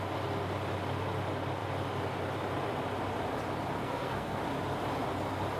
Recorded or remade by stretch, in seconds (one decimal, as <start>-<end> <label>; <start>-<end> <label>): 0.0-3.8 recorded; 3.8-4.4 remade; 4.4-5.6 recorded